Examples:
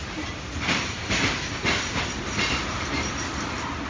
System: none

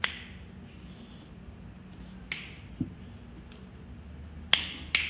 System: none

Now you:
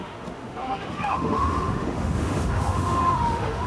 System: autoencoder, DAC-VAE